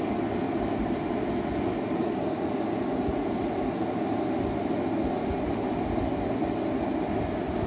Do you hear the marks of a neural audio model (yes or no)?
no